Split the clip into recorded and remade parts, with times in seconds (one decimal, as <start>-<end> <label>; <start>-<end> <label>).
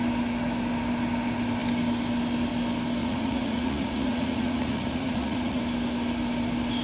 0.0-3.0 recorded; 3.0-5.6 remade; 5.6-6.8 recorded